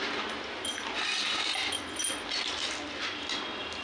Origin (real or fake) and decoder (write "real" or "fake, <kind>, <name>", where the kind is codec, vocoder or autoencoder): real